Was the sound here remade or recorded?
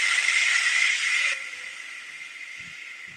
recorded